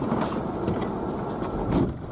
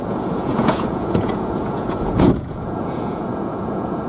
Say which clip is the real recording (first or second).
first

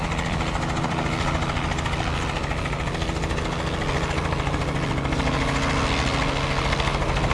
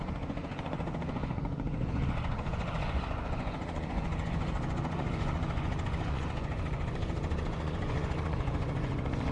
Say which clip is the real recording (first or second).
first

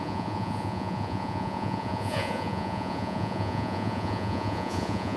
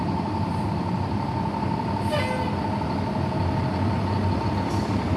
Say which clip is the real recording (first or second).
second